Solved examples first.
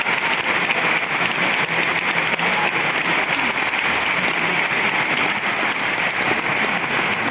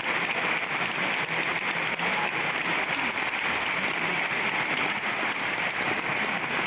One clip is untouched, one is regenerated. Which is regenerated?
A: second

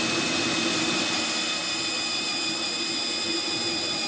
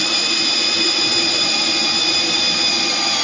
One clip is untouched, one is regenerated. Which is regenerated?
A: second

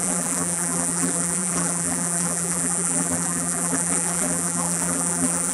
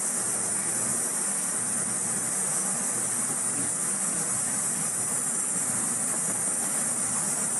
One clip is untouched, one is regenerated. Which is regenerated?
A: first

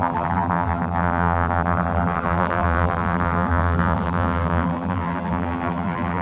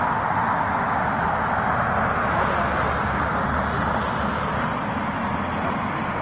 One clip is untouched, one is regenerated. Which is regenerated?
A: first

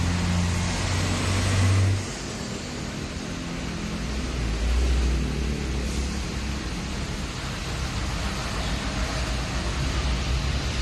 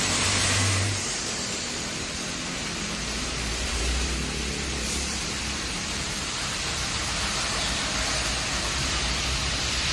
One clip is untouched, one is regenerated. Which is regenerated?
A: second